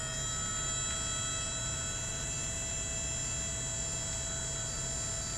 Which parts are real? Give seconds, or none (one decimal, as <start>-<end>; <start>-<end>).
0.0-5.4